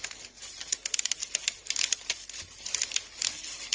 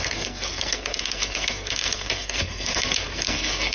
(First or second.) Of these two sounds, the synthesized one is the second